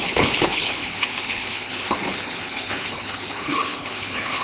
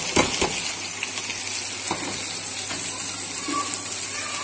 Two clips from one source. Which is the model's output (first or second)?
first